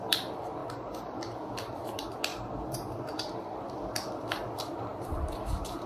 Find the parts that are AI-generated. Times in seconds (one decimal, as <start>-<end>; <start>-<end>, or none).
none